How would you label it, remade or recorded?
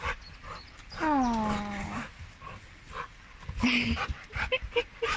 recorded